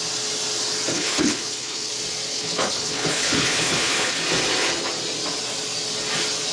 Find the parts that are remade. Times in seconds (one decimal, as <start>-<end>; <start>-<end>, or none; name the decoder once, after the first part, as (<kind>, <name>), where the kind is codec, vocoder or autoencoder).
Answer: 0.9-1.9 (codec, HILCodec); 2.3-4.2